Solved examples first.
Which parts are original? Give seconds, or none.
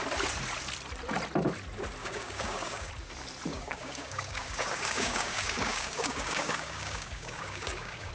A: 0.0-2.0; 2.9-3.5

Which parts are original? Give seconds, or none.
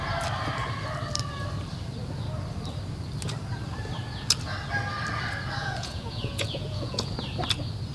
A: 0.0-5.6; 7.1-7.9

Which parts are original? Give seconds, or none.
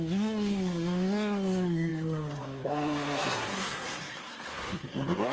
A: none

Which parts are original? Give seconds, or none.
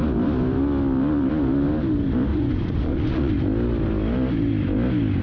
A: 0.0-2.3; 3.3-5.2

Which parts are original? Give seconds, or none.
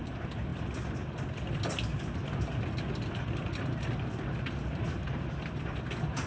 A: 0.0-6.3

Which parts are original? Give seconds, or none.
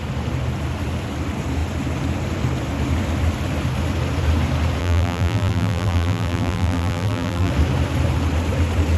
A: 0.0-4.8; 7.5-9.0